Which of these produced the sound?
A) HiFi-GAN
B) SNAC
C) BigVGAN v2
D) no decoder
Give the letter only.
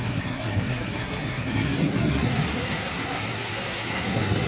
B